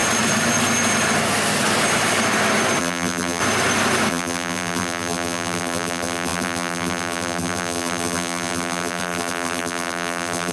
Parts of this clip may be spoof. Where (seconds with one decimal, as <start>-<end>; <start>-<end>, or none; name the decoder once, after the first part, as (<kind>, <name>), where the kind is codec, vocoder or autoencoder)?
2.8-3.4 (vocoder, BigVGAN v2); 4.1-10.5